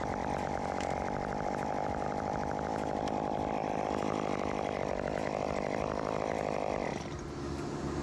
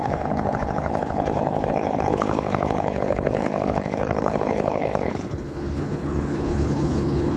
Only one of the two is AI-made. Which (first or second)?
second